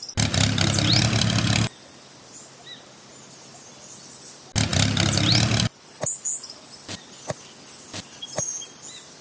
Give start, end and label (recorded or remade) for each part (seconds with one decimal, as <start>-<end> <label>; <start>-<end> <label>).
0.0-9.2 recorded